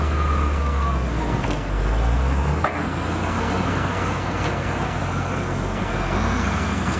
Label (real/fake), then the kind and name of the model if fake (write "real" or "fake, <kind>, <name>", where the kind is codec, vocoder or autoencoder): fake, codec, SNAC